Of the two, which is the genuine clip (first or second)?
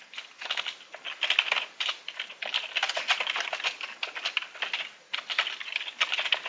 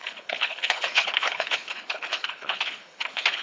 first